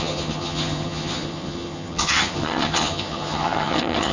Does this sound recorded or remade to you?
remade